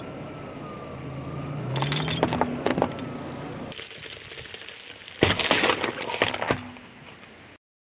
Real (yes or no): yes